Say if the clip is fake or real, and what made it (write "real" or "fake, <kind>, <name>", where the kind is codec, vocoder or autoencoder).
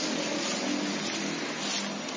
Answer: real